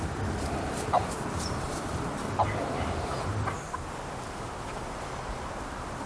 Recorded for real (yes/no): no